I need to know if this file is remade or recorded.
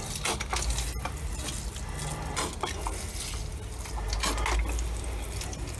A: recorded